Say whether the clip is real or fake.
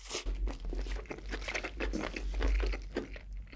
real